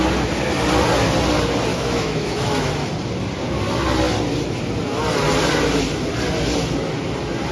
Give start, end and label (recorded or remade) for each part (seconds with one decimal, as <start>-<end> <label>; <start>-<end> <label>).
0.0-1.7 recorded; 1.7-2.7 remade; 2.7-7.5 recorded